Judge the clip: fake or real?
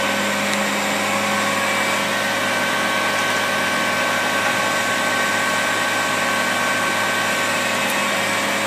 real